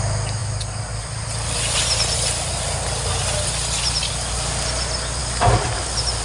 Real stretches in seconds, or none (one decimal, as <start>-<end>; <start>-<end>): 0.0-5.2